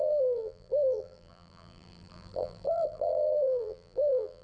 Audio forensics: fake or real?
fake